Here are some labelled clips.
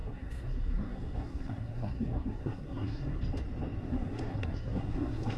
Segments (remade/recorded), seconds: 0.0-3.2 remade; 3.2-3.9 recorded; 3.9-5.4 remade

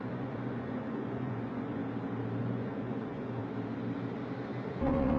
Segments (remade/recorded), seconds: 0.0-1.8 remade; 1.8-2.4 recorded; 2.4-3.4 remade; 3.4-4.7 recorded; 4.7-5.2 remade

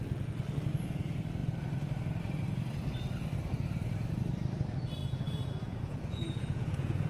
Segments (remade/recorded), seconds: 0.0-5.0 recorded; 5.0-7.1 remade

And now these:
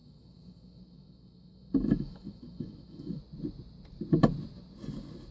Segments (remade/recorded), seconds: 0.0-3.2 remade; 3.2-5.3 recorded